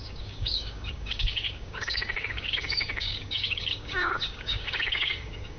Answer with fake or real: fake